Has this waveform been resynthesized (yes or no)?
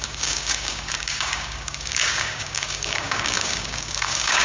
yes